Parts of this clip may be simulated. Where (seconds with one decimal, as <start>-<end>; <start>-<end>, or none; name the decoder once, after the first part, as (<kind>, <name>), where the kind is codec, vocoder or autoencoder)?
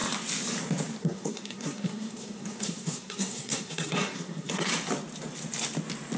1.0-4.7 (codec, SNAC)